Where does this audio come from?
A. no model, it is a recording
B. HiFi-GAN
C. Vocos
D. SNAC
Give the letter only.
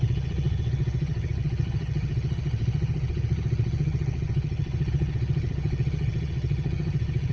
B